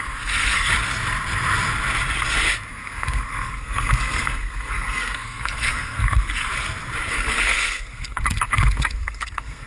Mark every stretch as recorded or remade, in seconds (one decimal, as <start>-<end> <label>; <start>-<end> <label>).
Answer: 0.0-0.7 remade; 0.7-2.7 recorded; 2.7-6.5 remade; 6.5-7.1 recorded; 7.1-9.7 remade